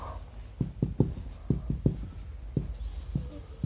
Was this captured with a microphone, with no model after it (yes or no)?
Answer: yes